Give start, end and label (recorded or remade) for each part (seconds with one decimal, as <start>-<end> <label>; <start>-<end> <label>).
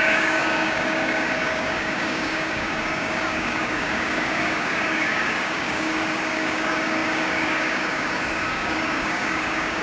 0.0-9.8 remade